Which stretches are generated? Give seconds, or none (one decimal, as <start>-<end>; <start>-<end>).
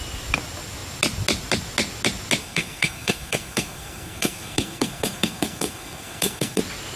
2.4-6.6